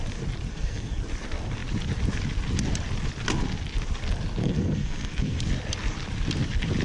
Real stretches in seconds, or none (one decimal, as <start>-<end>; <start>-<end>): 0.0-0.5; 1.0-4.4; 5.4-6.8